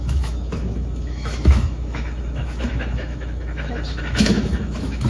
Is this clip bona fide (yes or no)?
no